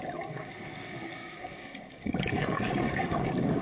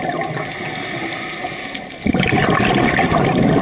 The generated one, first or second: first